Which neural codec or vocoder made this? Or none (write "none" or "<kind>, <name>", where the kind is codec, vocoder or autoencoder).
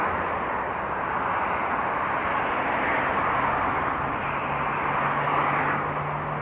none